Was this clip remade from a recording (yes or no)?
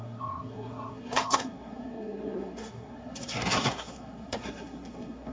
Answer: yes